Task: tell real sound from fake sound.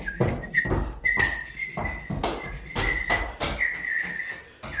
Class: real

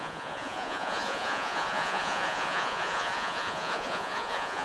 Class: fake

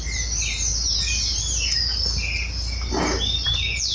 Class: real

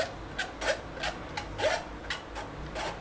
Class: real